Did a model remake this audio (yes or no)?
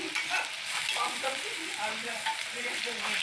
no